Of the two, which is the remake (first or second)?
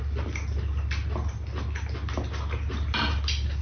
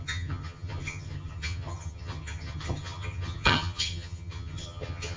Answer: second